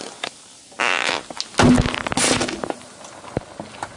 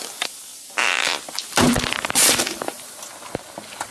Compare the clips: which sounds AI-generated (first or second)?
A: second